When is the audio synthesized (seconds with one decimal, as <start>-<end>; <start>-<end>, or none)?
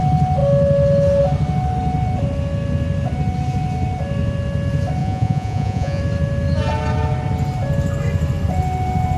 5.0-6.0